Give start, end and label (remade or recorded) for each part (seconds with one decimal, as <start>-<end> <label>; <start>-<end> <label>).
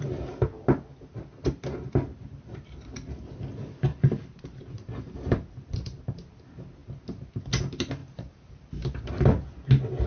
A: 0.0-3.9 recorded; 3.9-6.3 remade; 6.3-8.0 recorded; 8.0-9.1 remade; 9.1-10.1 recorded